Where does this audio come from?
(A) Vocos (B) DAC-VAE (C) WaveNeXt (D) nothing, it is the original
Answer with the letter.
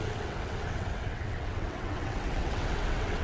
C